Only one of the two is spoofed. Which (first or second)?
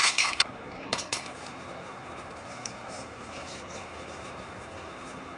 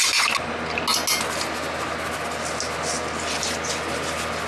first